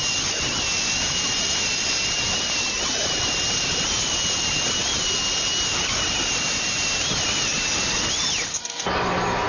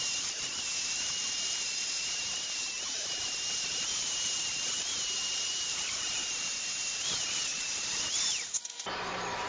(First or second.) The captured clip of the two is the first